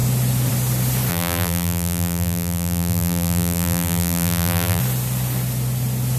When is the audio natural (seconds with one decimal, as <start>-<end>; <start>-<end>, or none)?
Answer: 0.0-1.1; 4.8-6.2